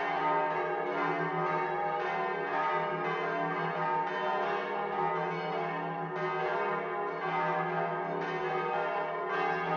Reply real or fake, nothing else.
real